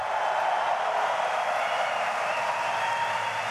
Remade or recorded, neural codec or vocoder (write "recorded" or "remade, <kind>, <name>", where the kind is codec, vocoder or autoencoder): recorded